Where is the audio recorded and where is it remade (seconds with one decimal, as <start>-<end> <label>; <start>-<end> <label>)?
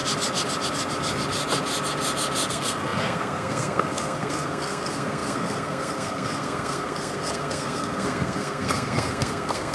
0.0-2.5 recorded; 2.5-9.7 remade